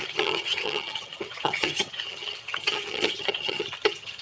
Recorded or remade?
remade